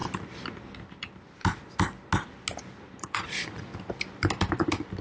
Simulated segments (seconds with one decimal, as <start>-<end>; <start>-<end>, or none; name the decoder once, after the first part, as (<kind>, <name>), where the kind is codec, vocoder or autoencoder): 3.0-3.7 (vocoder, Vocos)

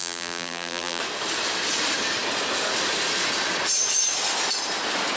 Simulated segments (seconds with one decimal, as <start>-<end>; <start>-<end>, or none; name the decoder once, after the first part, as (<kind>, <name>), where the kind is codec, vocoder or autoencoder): 0.0-1.0 (vocoder, BigVGAN v2)